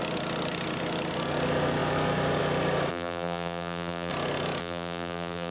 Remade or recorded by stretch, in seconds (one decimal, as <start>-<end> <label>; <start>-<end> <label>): 0.0-2.9 recorded; 2.9-4.1 remade; 4.1-4.6 recorded; 4.6-5.5 remade